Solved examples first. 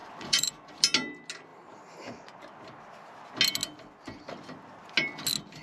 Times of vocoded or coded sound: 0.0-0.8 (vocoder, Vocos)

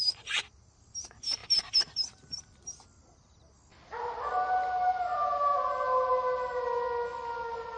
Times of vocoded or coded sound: none